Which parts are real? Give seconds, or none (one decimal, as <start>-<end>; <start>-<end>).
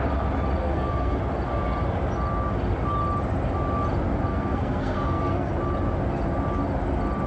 0.0-0.6; 1.2-4.3; 5.5-7.3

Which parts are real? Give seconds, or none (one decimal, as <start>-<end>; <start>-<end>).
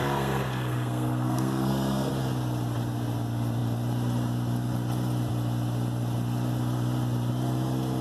2.1-8.0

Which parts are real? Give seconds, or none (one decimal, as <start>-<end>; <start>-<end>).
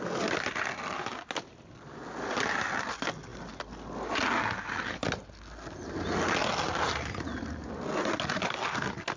0.0-9.2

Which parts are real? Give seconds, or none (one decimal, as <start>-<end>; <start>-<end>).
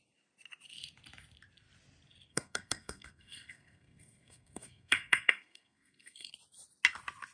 0.0-2.3; 6.3-7.3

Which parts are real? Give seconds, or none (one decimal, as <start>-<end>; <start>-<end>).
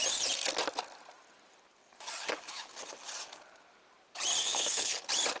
0.0-4.4; 5.0-5.4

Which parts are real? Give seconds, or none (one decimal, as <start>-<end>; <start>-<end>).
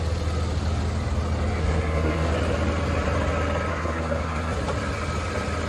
0.0-1.6; 2.3-3.7; 4.6-5.7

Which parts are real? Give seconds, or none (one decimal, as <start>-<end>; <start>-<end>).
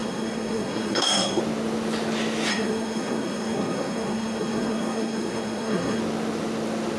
1.4-2.5; 6.0-7.0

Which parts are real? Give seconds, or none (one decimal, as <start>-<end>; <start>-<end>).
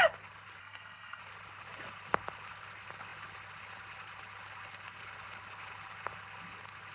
0.0-0.6; 1.2-6.9